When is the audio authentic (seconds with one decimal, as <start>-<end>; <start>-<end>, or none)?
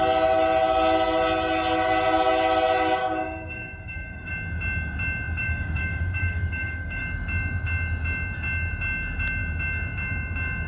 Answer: 0.0-3.0; 4.3-5.4; 7.0-10.7